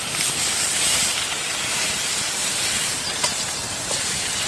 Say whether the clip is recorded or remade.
remade